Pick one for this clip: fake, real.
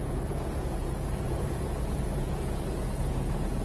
fake